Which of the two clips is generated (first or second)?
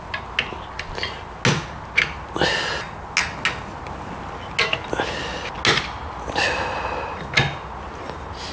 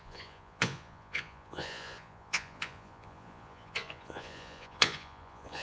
second